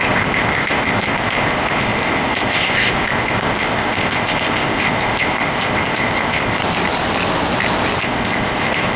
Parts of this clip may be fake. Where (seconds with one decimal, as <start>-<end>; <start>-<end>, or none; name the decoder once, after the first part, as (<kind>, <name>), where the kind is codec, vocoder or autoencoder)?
0.0-6.6 (codec, ZipCodec); 8.0-9.0